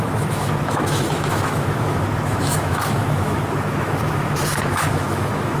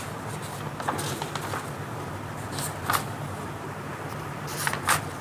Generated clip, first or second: first